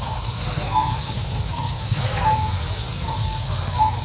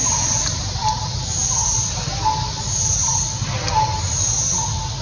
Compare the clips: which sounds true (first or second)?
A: second